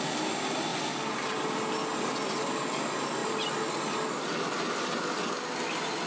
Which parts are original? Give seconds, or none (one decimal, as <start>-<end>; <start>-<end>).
0.0-6.1